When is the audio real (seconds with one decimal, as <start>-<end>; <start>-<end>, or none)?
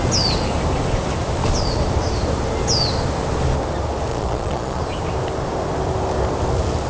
0.0-4.1; 4.8-6.9